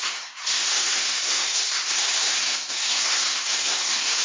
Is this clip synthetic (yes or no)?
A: yes